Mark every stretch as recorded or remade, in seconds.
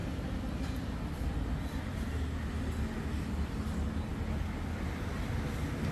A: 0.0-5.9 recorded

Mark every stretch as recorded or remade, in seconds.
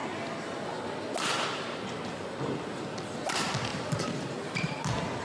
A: 0.0-3.7 recorded; 3.7-4.8 remade; 4.8-5.2 recorded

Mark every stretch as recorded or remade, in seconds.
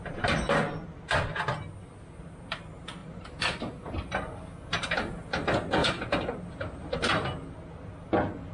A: 0.0-3.0 recorded; 3.0-3.9 remade; 3.9-5.8 recorded; 5.8-6.5 remade; 6.5-8.5 recorded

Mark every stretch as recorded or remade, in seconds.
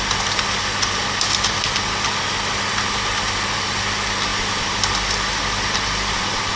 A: 0.0-4.3 recorded; 4.3-6.6 remade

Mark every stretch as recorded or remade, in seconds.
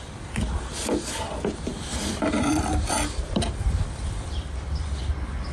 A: 0.0-1.7 recorded; 1.7-5.0 remade; 5.0-5.5 recorded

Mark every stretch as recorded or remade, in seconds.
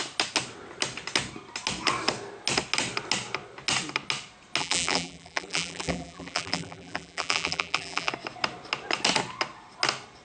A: 0.0-4.6 recorded; 4.6-8.1 remade; 8.1-10.2 recorded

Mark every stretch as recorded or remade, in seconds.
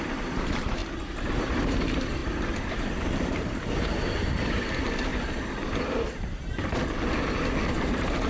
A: 0.0-0.8 remade; 0.8-1.4 recorded; 1.4-5.1 remade; 5.1-7.7 recorded; 7.7-8.3 remade